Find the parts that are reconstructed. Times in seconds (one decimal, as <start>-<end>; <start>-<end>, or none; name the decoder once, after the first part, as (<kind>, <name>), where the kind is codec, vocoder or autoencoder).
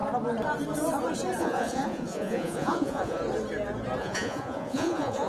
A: 1.4-3.2 (vocoder, Vocos); 4.0-5.3